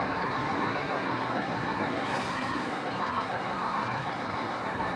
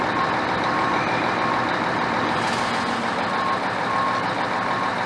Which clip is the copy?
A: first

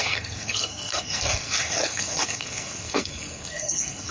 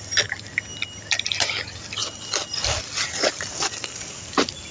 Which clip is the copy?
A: first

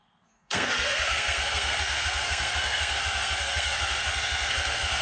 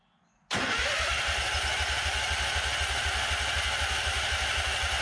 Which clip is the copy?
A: first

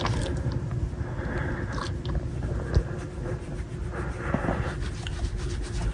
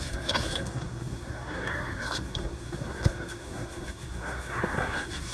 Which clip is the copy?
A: second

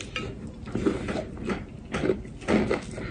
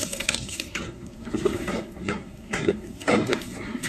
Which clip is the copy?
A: second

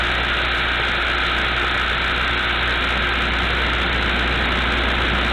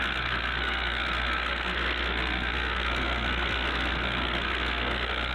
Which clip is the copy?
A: second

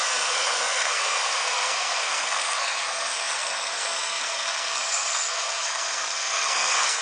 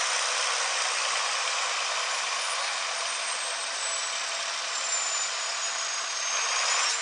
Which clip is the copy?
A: first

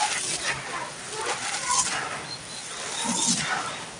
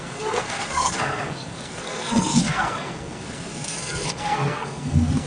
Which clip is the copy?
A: second